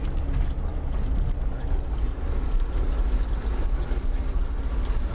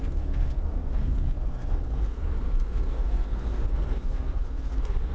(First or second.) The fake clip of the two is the second